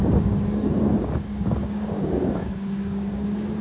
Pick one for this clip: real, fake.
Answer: fake